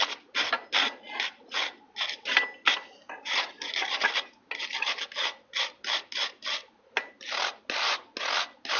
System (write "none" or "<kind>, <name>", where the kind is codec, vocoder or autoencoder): none